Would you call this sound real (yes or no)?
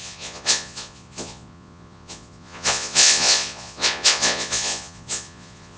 no